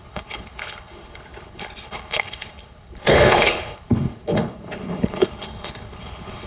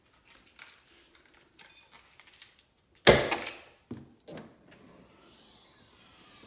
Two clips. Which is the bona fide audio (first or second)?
second